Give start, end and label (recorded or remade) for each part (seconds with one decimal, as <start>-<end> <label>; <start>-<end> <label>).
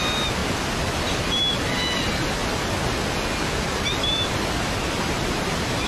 0.0-5.9 recorded